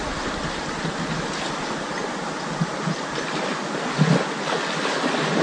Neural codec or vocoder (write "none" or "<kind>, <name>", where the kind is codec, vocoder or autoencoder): none